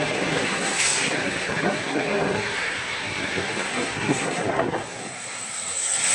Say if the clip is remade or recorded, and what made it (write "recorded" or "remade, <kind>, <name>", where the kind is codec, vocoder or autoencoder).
remade, codec, SNAC